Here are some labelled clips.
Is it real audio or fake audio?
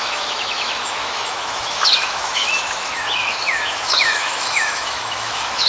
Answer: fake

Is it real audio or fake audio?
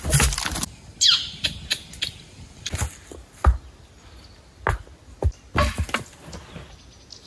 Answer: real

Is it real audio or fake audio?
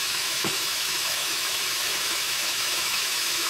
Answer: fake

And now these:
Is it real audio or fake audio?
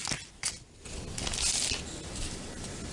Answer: real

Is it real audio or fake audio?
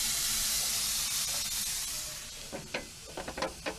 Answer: real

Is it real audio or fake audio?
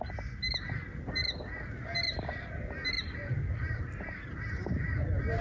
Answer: real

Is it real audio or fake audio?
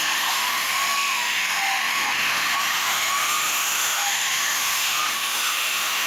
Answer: fake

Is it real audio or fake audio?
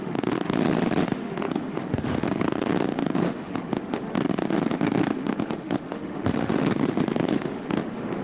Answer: fake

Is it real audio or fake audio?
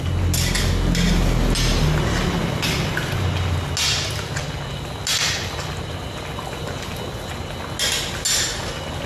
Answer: real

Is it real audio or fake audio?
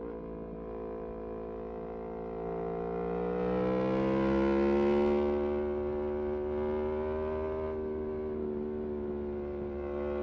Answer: real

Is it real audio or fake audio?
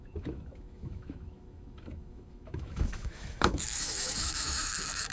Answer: fake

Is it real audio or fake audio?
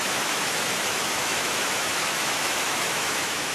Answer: fake